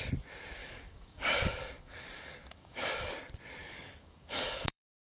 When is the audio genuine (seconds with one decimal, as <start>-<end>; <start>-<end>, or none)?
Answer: 0.0-0.6; 3.1-3.6